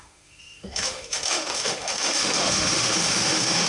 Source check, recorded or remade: remade